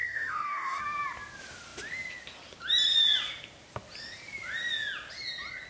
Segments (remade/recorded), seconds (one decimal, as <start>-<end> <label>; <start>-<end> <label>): 0.0-0.8 remade; 0.8-5.7 recorded

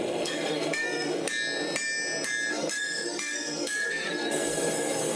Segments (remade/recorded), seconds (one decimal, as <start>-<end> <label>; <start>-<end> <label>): 0.0-1.2 remade; 1.2-2.5 recorded; 2.5-5.2 remade

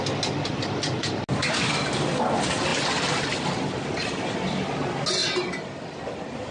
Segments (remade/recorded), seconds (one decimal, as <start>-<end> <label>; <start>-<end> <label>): 0.0-6.5 recorded